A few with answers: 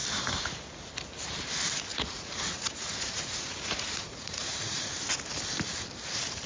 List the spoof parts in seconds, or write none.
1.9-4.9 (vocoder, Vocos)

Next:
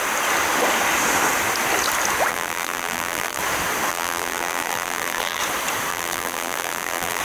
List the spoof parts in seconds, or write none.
2.3-3.4 (vocoder, BigVGAN v2); 3.9-5.4; 5.9-7.2

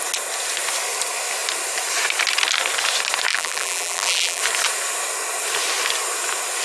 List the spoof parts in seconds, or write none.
3.3-4.4 (vocoder, BigVGAN v2)

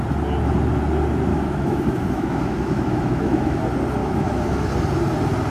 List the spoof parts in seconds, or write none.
1.3-3.6 (autoencoder, DAC-VAE); 4.0-4.7

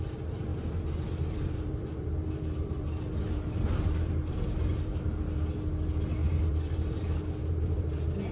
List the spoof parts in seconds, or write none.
0.5-5.0 (vocoder, BigVGAN v2); 6.2-8.3